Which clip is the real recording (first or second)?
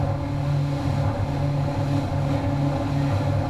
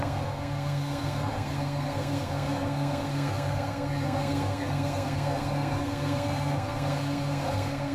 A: first